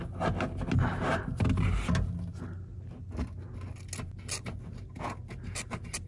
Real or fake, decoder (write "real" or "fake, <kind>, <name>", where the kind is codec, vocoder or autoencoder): real